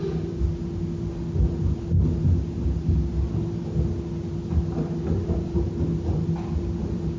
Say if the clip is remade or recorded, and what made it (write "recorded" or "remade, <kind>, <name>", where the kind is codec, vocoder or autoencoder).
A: recorded